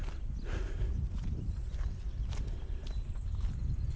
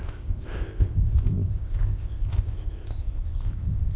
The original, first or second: first